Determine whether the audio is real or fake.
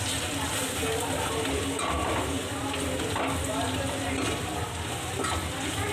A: real